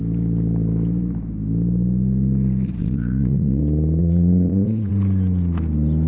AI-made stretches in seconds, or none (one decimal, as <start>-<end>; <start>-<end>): 2.8-3.6; 4.0-4.9